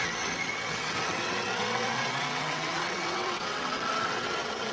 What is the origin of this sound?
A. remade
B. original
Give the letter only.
A